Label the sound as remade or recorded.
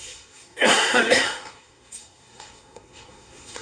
remade